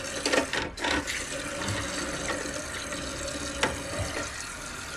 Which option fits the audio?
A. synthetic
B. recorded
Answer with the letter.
B